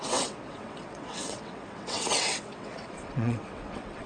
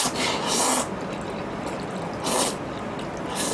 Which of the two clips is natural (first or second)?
second